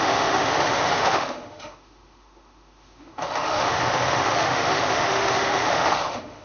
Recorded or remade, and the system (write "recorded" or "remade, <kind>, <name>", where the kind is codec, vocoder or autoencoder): remade, autoencoder, DAC-VAE